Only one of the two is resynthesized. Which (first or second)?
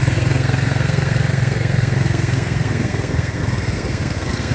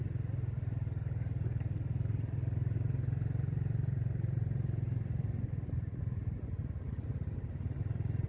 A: first